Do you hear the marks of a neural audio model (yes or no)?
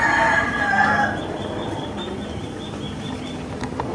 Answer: no